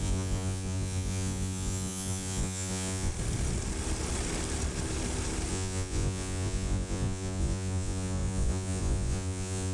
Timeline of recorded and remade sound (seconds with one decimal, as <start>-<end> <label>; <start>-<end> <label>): 0.0-3.1 remade; 3.1-5.5 recorded; 5.5-9.7 remade